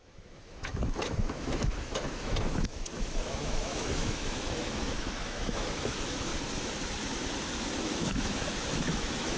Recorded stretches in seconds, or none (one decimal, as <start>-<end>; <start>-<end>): 6.3-7.8